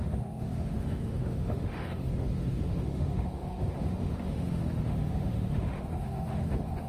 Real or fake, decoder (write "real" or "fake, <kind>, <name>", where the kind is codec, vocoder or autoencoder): fake, autoencoder, DAC-VAE